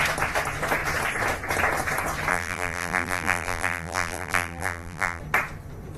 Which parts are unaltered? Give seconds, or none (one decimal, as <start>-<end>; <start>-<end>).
0.0-2.3; 5.2-6.0